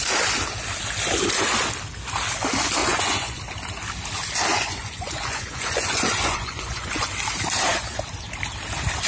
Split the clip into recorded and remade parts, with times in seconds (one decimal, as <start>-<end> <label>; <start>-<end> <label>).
0.0-2.8 recorded; 2.8-3.4 remade; 3.4-4.5 recorded; 4.5-7.1 remade; 7.1-9.1 recorded